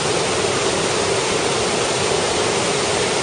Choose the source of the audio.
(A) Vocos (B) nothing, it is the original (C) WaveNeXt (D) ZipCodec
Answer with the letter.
B